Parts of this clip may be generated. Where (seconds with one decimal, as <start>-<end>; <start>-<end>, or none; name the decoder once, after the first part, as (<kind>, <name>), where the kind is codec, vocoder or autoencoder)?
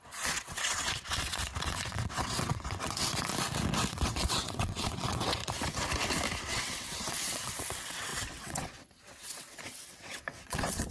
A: 0.0-3.3 (vocoder, WaveNeXt); 3.9-5.4; 6.4-10.9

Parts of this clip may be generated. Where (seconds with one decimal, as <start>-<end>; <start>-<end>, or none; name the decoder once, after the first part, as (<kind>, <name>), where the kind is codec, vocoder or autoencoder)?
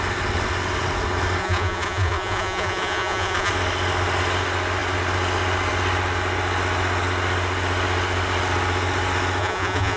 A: 1.4-3.5 (vocoder, Vocos); 9.4-10.0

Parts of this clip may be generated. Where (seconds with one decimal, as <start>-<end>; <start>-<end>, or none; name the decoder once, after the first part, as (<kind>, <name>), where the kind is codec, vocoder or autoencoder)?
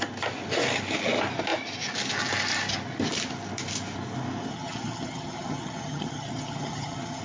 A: 4.5-7.2 (vocoder, HiFi-GAN)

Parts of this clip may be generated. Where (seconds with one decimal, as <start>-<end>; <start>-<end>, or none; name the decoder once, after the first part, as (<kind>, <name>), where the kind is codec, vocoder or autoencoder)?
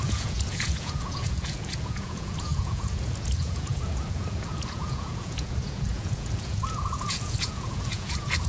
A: 0.0-8.5 (vocoder, Vocos)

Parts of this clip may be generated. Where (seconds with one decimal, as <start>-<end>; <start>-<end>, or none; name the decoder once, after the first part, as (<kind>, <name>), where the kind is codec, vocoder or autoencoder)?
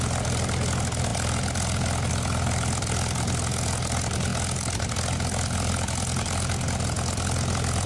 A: none